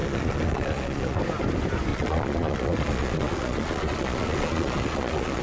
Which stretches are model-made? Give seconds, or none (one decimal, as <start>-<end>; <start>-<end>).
0.0-1.2; 1.9-5.4